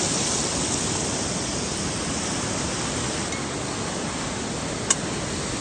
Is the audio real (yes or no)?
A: yes